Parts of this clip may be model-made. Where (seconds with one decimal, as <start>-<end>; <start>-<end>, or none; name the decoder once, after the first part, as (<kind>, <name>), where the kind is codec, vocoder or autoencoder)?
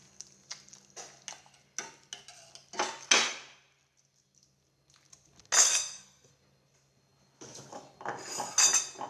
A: 5.6-6.3 (codec, SNAC)